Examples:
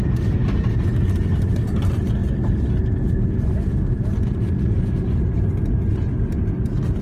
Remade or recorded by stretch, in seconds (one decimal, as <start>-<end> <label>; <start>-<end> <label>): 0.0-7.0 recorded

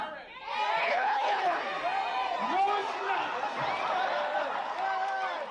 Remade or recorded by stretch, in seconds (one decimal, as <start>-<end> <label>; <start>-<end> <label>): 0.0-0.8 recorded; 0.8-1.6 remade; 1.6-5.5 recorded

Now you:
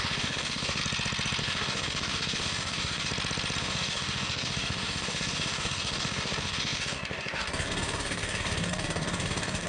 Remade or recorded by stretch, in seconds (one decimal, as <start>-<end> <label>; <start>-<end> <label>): 0.0-0.8 remade; 0.8-1.4 recorded; 1.4-3.1 remade; 3.1-3.6 recorded; 3.6-9.7 remade

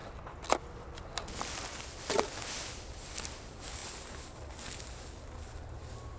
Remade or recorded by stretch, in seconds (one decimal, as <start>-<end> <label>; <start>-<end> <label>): 0.0-6.2 recorded